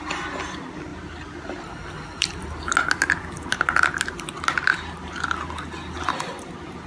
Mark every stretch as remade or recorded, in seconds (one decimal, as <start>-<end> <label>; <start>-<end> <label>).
0.0-6.9 recorded